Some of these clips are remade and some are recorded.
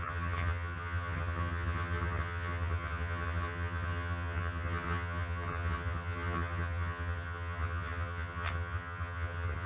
remade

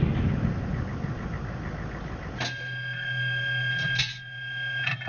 recorded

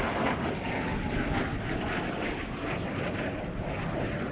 recorded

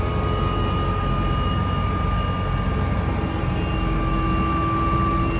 recorded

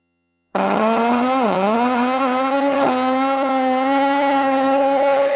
remade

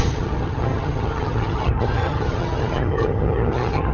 remade